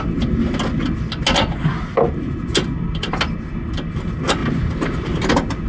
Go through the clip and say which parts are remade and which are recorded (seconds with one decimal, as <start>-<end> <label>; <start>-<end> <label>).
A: 0.0-5.7 recorded